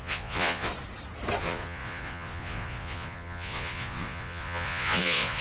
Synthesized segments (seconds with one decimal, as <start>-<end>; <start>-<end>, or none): 0.0-0.7; 1.4-5.4